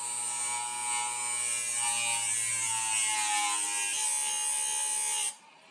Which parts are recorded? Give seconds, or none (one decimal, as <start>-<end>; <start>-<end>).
0.0-5.7